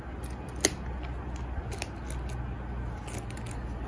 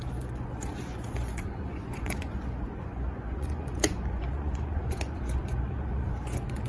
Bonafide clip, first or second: first